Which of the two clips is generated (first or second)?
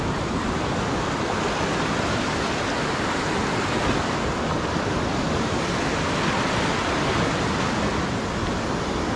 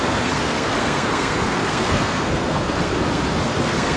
second